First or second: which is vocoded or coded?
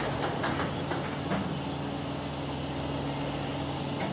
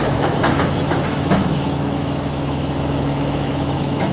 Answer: second